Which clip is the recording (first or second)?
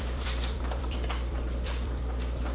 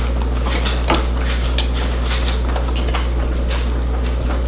second